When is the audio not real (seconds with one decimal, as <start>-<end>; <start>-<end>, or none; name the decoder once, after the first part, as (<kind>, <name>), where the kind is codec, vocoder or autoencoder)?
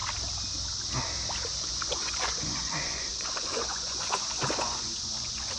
1.6-5.6 (vocoder, Vocos)